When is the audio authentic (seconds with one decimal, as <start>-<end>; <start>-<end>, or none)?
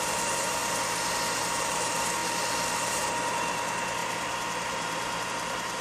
0.6-1.4; 2.2-2.8